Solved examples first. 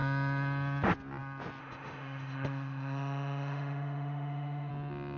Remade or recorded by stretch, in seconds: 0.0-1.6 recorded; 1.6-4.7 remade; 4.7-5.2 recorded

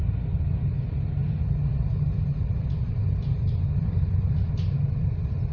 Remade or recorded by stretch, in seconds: 0.0-5.5 recorded

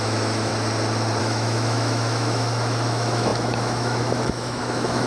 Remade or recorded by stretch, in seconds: 0.0-0.5 remade; 0.5-1.2 recorded; 1.2-5.1 remade

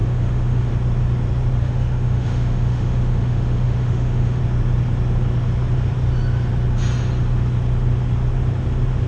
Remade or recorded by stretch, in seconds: 0.0-0.7 remade; 0.7-1.6 recorded; 1.6-4.4 remade; 4.4-9.1 recorded